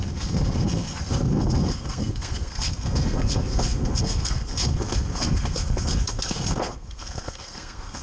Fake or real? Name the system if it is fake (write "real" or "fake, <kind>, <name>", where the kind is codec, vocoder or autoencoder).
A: fake, codec, SNAC